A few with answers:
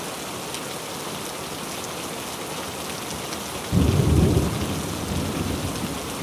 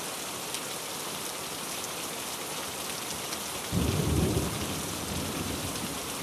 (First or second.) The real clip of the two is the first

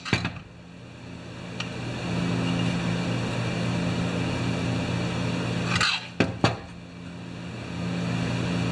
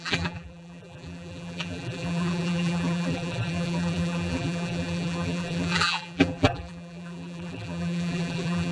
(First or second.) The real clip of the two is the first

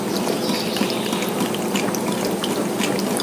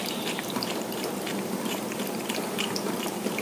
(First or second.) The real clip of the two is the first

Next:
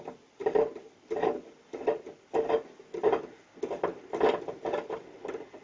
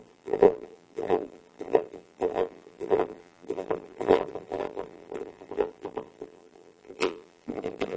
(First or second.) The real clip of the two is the first